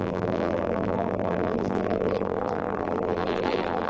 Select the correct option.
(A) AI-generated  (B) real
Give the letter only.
A